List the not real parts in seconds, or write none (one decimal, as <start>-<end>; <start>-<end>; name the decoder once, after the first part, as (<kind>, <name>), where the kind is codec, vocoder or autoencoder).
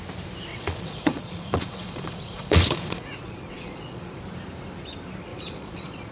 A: 0.5-4.2 (vocoder, Vocos); 5.3-6.1